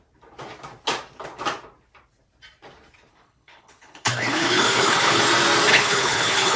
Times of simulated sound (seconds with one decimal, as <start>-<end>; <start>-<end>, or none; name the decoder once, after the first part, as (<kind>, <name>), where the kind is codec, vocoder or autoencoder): 3.1-5.2 (codec, HILCodec); 5.7-6.6